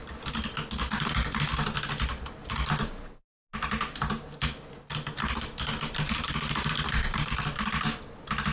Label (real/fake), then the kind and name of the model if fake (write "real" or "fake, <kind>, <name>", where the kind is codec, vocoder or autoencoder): real